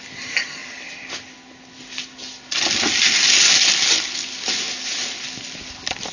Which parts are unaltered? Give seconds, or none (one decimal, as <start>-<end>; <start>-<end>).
0.0-6.1